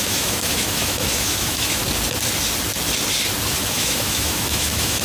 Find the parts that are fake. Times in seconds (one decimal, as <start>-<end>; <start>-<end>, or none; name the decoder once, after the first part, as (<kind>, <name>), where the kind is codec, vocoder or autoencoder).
0.0-1.8 (autoencoder, DAC-VAE); 3.6-5.0